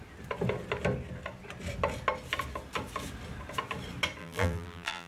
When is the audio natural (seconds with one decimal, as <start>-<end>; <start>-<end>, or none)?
0.0-4.2